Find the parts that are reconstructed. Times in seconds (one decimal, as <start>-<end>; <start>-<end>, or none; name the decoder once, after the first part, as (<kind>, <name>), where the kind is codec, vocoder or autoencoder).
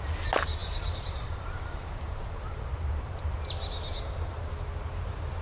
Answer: 0.6-3.4 (vocoder, BigVGAN v2)